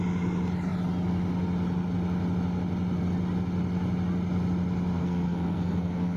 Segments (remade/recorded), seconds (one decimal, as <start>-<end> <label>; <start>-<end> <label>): 0.0-5.0 recorded; 5.0-6.2 remade